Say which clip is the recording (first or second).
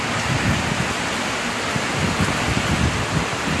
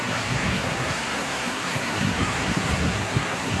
first